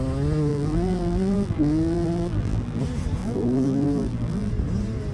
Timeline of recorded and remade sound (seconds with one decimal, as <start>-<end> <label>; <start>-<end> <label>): 0.0-0.5 recorded; 0.5-2.8 remade; 2.8-3.2 recorded; 3.2-4.5 remade; 4.5-5.1 recorded